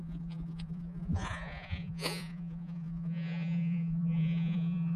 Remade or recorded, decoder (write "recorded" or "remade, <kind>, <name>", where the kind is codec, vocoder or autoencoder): remade, vocoder, Vocos